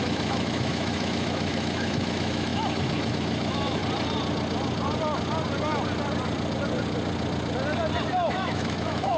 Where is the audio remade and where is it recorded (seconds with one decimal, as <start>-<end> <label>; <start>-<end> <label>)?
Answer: 0.0-3.8 remade; 3.8-8.3 recorded; 8.3-9.2 remade